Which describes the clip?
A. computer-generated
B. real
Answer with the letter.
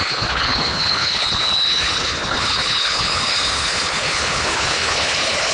A